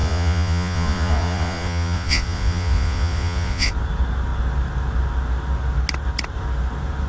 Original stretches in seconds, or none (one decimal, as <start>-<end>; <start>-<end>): 3.7-7.1